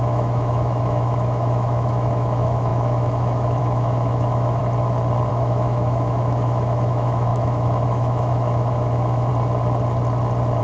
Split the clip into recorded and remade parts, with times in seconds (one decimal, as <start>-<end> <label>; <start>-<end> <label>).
0.0-4.6 remade; 4.6-5.3 recorded; 5.3-9.3 remade; 9.3-10.6 recorded